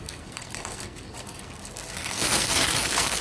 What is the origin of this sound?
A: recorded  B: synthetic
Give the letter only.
B